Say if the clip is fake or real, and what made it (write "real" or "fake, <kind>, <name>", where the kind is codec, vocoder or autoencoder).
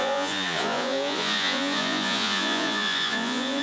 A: fake, vocoder, Vocos